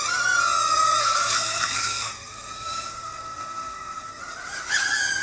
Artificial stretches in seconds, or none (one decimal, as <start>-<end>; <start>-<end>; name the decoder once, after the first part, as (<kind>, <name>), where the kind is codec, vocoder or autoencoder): 1.0-4.1 (codec, SNAC)